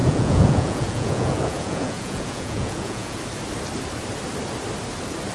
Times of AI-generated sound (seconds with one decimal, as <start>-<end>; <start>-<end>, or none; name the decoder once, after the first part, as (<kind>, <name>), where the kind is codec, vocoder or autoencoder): 0.0-3.2 (vocoder, Vocos)